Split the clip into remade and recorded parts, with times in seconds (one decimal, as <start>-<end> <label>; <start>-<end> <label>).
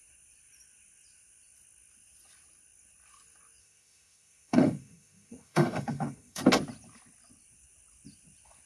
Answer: 0.0-3.6 recorded; 3.6-6.4 remade; 6.4-8.7 recorded